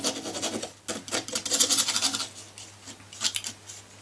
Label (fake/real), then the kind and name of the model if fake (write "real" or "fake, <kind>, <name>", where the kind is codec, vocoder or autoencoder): real